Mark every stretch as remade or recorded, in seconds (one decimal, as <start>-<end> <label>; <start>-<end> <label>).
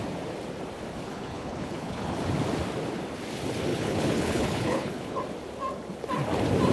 0.0-1.1 recorded; 1.1-2.2 remade; 2.2-3.7 recorded; 3.7-5.2 remade; 5.2-6.7 recorded